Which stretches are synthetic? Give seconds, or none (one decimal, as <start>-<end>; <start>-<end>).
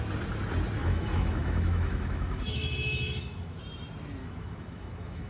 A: 0.8-3.6; 4.2-5.3